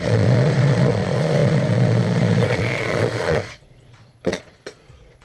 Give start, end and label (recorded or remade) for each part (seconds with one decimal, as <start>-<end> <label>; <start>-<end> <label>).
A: 0.0-5.2 remade